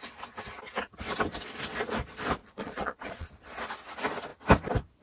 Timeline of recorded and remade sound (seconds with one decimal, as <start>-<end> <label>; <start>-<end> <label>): 0.0-2.4 recorded; 2.4-3.3 remade; 3.3-5.0 recorded